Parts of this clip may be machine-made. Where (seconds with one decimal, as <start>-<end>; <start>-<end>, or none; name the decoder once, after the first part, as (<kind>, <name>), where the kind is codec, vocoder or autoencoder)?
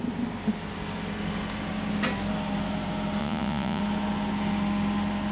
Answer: 3.2-3.8 (vocoder, Vocos)